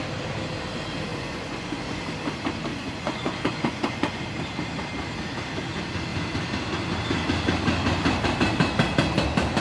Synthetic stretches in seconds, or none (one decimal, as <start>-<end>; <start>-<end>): 1.1-2.0; 2.7-4.2